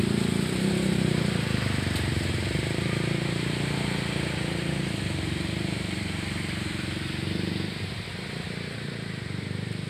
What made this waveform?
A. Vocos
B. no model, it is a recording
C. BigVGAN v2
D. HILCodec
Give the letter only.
C